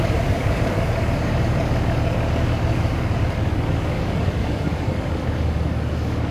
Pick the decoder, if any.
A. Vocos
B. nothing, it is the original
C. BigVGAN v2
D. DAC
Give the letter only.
D